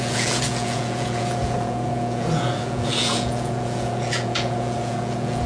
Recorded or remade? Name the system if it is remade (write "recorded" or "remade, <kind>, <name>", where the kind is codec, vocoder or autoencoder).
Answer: remade, vocoder, Vocos